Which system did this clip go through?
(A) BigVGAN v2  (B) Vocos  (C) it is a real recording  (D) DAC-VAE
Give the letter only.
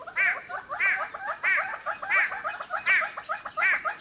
C